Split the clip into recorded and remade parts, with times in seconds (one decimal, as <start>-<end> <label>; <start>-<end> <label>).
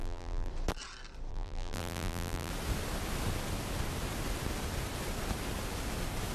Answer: 0.0-0.5 remade; 0.5-1.3 recorded; 1.3-2.5 remade; 2.5-6.3 recorded